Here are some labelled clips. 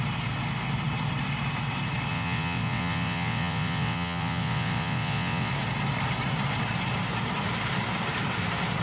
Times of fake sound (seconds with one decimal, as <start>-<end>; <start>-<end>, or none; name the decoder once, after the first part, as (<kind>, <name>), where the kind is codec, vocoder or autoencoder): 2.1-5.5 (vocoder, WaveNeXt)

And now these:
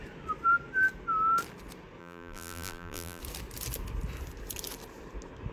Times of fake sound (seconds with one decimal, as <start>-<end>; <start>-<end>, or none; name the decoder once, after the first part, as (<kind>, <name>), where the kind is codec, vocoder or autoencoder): 2.0-3.2 (vocoder, BigVGAN v2)

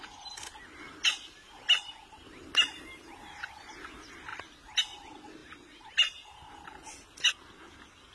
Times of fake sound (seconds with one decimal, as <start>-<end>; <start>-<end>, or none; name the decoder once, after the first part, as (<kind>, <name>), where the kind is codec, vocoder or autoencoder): none

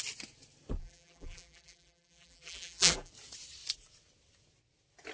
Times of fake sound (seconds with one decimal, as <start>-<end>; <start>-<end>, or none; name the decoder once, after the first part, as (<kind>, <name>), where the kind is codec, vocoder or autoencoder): 0.8-3.1 (vocoder, BigVGAN v2)

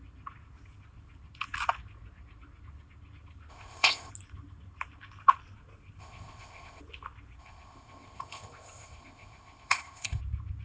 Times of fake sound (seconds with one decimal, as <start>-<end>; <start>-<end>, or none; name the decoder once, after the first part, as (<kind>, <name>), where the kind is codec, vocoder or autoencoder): 3.5-4.1 (codec, ZipCodec); 6.0-6.8; 7.4-10.2

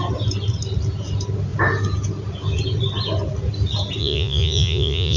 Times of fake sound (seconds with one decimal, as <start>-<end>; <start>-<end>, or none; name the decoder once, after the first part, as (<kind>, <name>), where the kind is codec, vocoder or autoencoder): 4.0-5.2 (vocoder, Vocos)